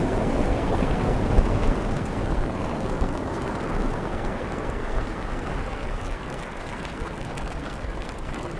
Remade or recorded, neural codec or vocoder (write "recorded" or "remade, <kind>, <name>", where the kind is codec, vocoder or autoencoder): remade, codec, SNAC